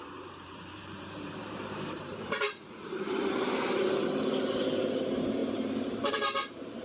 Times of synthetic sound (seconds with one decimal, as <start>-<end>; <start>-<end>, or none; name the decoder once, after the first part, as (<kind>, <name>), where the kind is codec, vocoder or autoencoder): 0.0-6.8 (vocoder, BigVGAN v2)